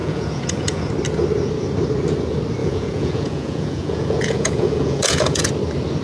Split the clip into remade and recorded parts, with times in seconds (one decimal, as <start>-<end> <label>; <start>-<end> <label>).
0.0-0.9 remade; 0.9-2.6 recorded; 2.6-5.5 remade; 5.5-6.0 recorded